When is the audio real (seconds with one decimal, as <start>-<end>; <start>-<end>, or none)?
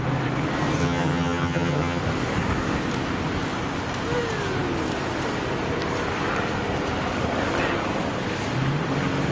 0.0-0.8; 2.0-9.3